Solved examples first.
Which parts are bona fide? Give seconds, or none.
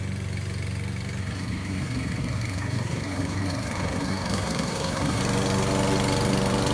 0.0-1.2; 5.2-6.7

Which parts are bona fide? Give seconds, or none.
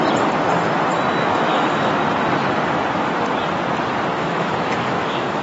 0.0-1.2; 2.0-4.1